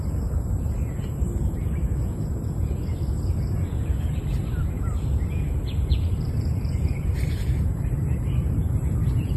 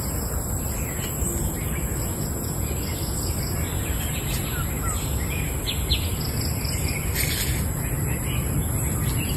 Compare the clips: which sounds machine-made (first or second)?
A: first